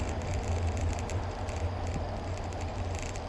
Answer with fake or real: real